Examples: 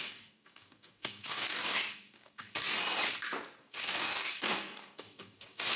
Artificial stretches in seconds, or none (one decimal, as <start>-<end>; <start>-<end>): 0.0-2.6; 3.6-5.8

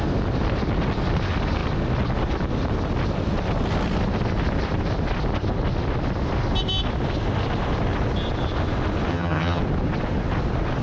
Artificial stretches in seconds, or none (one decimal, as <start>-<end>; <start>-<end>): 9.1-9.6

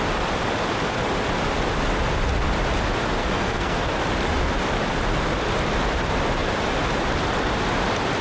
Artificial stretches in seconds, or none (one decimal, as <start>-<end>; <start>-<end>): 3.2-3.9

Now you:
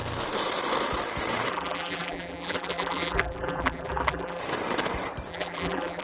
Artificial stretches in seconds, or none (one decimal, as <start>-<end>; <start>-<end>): 1.5-4.4; 5.3-6.0

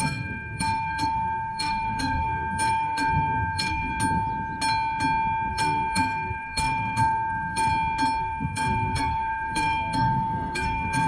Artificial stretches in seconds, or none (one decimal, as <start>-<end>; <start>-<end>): 0.0-3.9; 5.5-7.7; 8.2-11.1